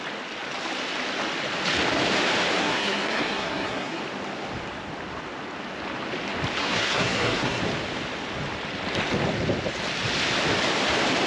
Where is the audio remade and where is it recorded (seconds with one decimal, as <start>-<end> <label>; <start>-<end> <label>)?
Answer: 0.0-2.6 recorded; 2.6-4.0 remade; 4.0-6.6 recorded; 6.6-7.6 remade; 7.6-11.3 recorded